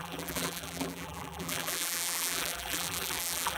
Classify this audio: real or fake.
fake